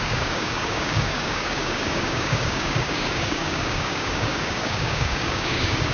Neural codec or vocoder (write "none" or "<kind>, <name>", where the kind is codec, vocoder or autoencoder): codec, DAC